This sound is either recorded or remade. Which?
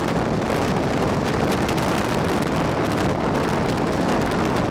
recorded